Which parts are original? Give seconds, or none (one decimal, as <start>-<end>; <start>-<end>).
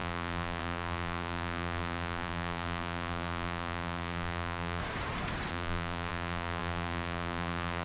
4.8-5.5